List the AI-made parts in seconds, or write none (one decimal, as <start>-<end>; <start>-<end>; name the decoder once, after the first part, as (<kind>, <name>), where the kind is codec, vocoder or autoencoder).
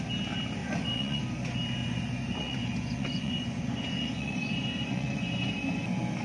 0.6-1.2 (vocoder, Vocos); 1.8-5.5